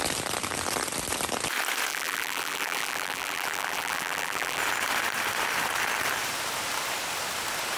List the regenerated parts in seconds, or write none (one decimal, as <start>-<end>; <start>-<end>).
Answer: 1.9-4.6